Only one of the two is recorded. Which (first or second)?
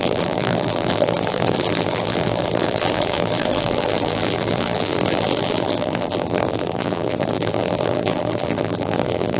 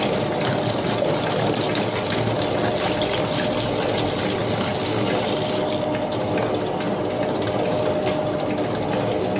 second